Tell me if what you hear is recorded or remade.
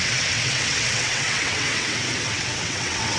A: remade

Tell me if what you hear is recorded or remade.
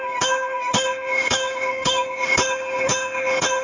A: remade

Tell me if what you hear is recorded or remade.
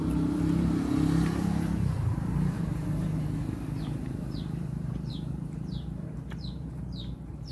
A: remade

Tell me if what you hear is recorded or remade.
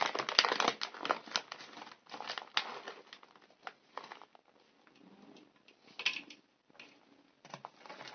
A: recorded